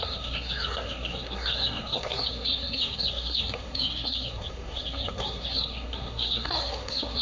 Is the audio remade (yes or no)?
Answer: yes